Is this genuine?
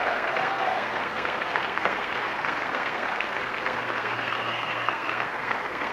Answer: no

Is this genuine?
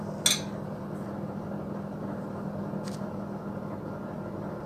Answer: yes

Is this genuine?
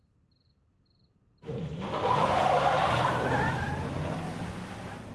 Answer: no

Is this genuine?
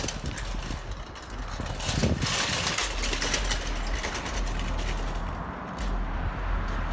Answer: yes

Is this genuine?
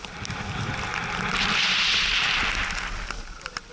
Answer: yes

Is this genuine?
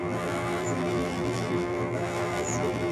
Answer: no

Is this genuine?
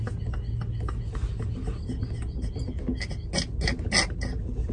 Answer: yes